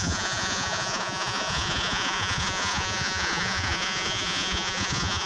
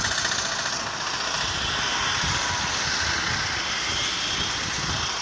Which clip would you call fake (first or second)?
first